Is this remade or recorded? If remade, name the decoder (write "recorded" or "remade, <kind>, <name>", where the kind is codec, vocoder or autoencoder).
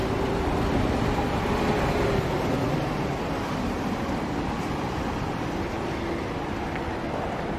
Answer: recorded